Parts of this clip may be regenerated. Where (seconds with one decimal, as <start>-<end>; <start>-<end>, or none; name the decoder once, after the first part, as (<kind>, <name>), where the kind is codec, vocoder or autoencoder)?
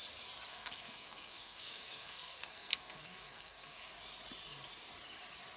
0.5-3.9 (codec, SNAC)